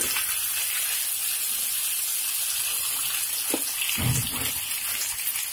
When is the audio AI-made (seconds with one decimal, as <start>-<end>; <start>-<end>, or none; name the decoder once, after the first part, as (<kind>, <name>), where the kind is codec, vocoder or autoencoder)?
none